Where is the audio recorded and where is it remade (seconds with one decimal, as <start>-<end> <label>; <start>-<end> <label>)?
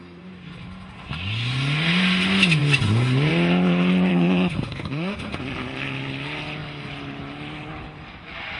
0.0-4.1 recorded; 4.1-5.4 remade; 5.4-8.6 recorded